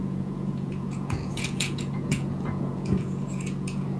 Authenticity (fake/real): fake